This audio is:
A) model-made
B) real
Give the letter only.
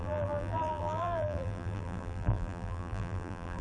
A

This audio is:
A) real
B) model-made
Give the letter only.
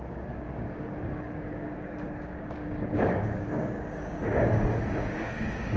B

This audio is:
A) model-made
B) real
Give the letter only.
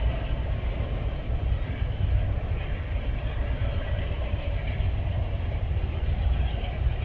B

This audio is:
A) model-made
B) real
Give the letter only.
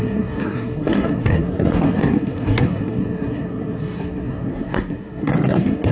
A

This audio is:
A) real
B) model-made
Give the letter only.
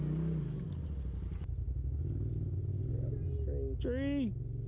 A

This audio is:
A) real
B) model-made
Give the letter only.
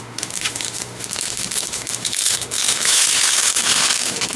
B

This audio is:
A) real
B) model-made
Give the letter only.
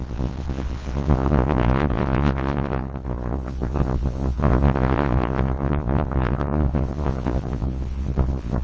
B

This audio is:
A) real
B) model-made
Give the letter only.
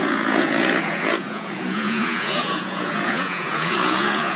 B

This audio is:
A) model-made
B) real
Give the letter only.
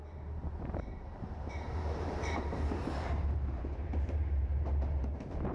A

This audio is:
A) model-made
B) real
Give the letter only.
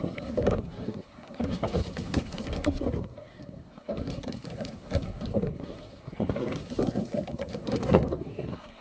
A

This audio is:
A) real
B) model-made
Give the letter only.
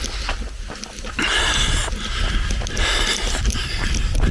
A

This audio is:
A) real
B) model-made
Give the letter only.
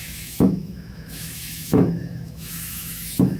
B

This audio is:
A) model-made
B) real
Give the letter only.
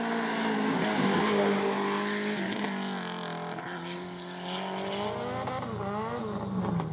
B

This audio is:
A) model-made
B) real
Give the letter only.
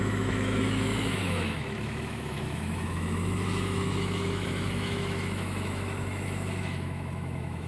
A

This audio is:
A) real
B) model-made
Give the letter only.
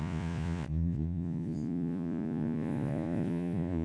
B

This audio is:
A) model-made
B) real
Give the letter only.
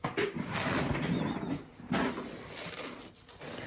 B